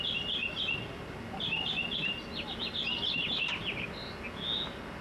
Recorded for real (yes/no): yes